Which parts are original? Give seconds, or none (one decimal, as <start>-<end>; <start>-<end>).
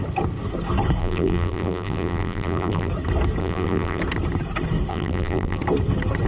0.0-1.0; 2.9-3.4; 4.0-4.9; 5.6-6.3